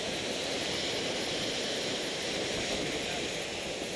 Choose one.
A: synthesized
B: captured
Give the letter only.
A